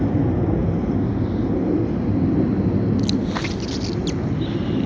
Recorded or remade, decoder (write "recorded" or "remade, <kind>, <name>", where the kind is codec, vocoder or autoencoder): recorded